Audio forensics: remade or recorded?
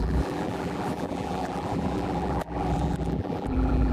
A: remade